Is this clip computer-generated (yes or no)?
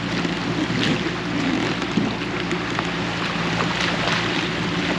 no